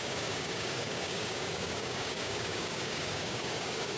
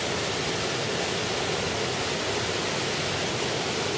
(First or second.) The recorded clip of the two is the second